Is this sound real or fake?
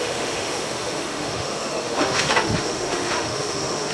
fake